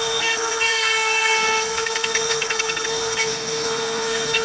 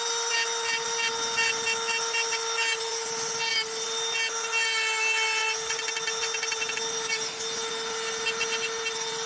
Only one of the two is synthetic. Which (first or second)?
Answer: first